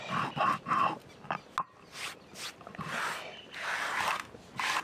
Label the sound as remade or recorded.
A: recorded